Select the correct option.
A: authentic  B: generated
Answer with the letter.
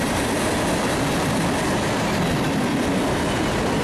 A